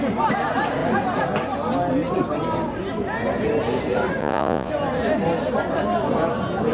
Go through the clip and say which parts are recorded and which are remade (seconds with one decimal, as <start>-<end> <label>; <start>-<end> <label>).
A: 0.0-4.2 recorded; 4.2-4.7 remade; 4.7-6.7 recorded